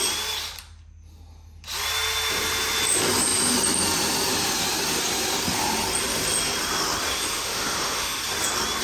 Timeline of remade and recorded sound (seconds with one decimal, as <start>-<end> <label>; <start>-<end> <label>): 0.0-7.3 recorded; 7.3-8.2 remade; 8.2-8.8 recorded